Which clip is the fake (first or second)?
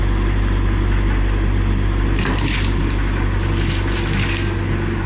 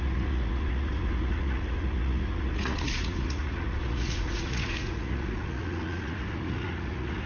second